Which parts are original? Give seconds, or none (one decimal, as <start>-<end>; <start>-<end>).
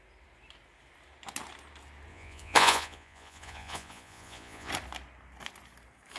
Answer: 0.0-2.1; 4.7-6.2